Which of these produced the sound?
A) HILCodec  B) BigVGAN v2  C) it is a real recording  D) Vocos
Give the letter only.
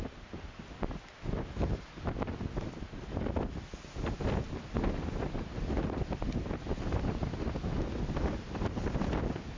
C